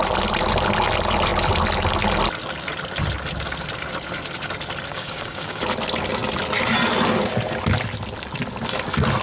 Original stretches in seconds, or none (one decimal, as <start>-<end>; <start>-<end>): 0.0-4.9; 5.6-9.2